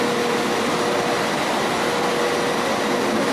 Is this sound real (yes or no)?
yes